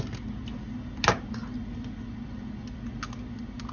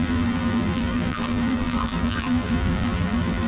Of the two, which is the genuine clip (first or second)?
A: first